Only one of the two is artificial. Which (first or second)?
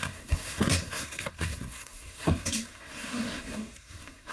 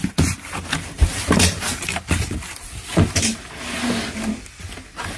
first